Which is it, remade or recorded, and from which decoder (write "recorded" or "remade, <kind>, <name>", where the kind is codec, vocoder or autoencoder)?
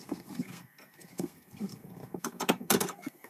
remade, codec, SNAC